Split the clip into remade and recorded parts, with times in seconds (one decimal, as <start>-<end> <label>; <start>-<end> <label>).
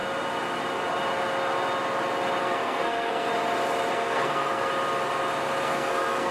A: 0.0-2.4 recorded; 2.4-3.3 remade; 3.3-3.9 recorded; 3.9-4.7 remade; 4.7-5.6 recorded; 5.6-6.3 remade